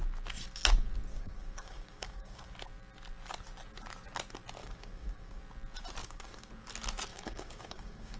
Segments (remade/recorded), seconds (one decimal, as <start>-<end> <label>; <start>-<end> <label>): 0.0-1.1 recorded; 1.1-2.4 remade; 2.4-4.6 recorded; 4.6-5.4 remade; 5.4-6.0 recorded; 6.0-6.5 remade; 6.5-7.1 recorded; 7.1-8.2 remade